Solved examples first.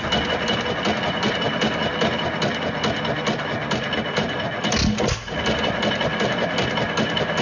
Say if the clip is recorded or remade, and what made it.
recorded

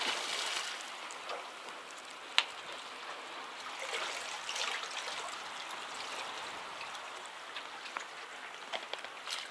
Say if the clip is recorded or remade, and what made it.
recorded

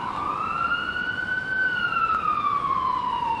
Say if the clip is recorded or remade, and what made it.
recorded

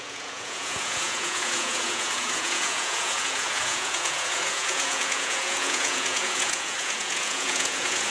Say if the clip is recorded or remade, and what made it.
remade, vocoder, Vocos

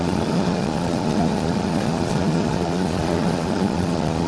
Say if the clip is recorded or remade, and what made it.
remade, vocoder, Vocos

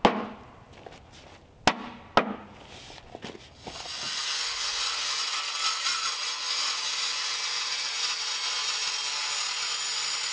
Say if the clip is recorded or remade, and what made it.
recorded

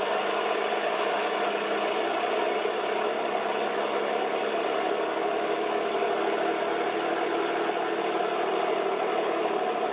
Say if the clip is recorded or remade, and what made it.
recorded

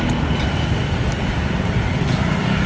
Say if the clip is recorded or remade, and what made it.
recorded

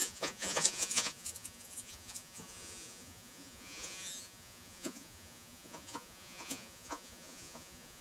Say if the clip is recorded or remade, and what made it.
remade, vocoder, Vocos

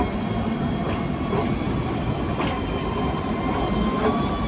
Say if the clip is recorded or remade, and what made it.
recorded